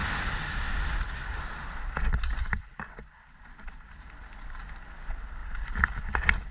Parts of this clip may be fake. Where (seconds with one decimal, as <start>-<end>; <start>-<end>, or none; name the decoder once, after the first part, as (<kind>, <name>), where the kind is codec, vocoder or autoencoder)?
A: 0.0-3.9 (vocoder, BigVGAN v2)